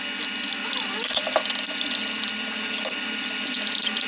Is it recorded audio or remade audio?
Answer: recorded